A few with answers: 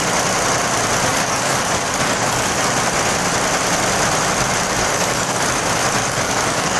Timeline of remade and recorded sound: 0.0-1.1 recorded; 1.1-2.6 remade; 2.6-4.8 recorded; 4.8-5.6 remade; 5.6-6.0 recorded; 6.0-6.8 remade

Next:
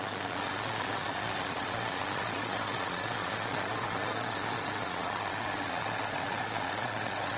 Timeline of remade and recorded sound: 0.0-7.4 remade

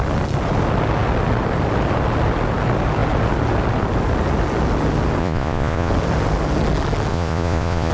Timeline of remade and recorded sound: 0.0-5.2 recorded; 5.2-5.9 remade; 5.9-7.1 recorded; 7.1-7.9 remade

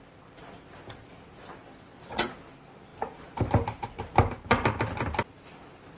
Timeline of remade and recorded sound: 0.0-1.6 recorded; 1.6-2.3 remade; 2.3-6.0 recorded

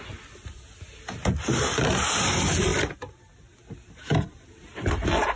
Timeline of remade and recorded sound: 0.0-5.4 recorded

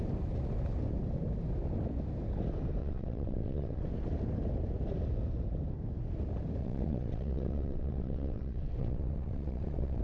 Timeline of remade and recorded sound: 0.0-2.8 recorded; 2.8-3.8 remade; 3.8-6.6 recorded; 6.6-10.0 remade

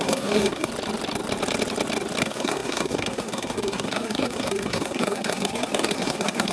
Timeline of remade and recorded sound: 0.0-0.7 remade; 0.7-2.2 recorded; 2.2-6.5 remade